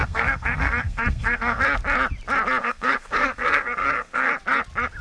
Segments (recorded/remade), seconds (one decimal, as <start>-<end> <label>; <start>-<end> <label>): 0.0-1.6 remade; 1.6-2.6 recorded; 2.6-4.3 remade; 4.3-5.0 recorded